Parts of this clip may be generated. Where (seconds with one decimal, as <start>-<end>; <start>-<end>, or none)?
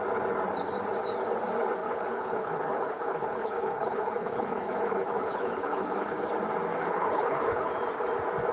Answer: 1.8-6.3; 6.8-7.7